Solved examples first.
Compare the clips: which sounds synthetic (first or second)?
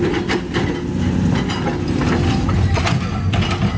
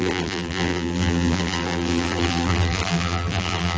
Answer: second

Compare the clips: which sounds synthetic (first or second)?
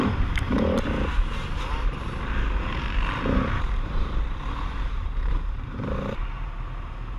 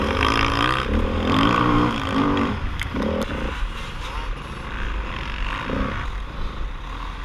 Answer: first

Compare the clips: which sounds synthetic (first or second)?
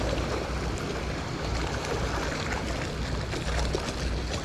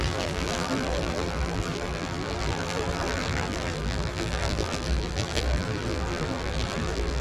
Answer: second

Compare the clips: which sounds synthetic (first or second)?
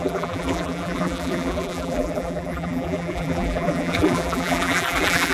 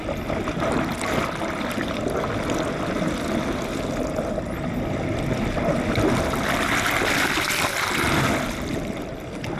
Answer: first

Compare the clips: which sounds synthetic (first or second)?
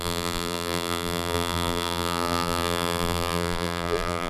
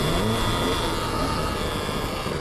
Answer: first